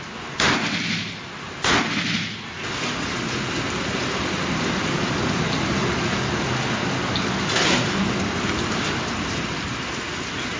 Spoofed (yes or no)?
no